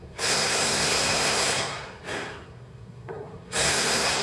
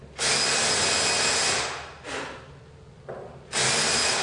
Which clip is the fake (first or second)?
first